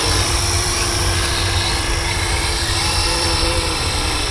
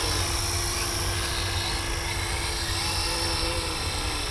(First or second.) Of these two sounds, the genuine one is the second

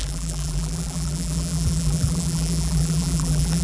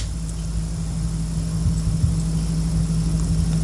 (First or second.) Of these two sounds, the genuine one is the second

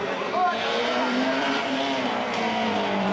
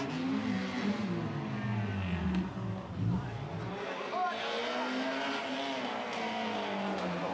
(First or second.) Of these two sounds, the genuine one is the second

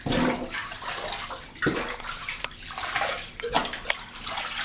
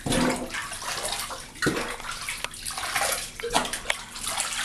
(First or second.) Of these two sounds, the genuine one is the second